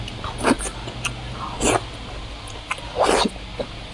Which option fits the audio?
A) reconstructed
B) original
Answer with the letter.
B